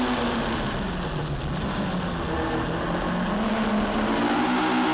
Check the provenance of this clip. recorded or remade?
recorded